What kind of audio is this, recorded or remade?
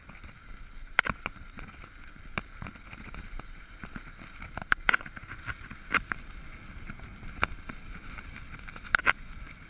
recorded